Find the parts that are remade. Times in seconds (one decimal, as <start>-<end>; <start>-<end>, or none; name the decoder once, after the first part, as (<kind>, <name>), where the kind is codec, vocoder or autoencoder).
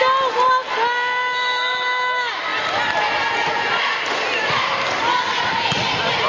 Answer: none